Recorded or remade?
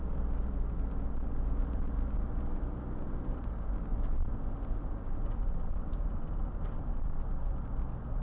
recorded